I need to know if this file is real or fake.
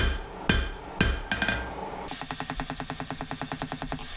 real